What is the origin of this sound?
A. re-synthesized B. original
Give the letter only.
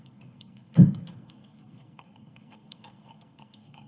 A